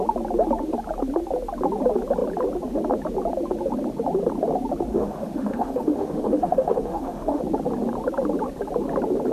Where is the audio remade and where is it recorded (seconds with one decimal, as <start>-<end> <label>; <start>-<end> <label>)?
0.0-4.9 recorded; 4.9-7.4 remade; 7.4-9.3 recorded